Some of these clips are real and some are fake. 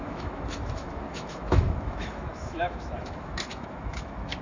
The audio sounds fake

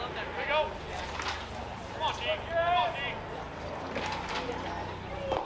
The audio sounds real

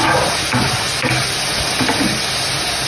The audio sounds real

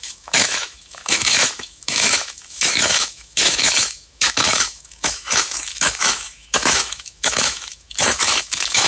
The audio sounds fake